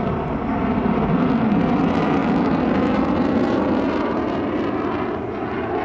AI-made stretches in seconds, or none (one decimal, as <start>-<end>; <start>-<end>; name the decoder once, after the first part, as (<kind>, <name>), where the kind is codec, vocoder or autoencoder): none